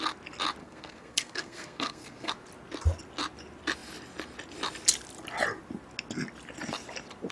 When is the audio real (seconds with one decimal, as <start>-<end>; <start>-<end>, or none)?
0.0-0.6; 2.3-7.3